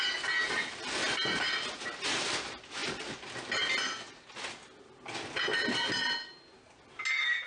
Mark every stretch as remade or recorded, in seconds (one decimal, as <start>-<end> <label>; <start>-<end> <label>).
0.0-7.5 recorded